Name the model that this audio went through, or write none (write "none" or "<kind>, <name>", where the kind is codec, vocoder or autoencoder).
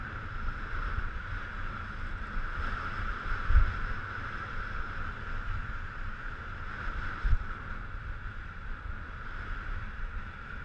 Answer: none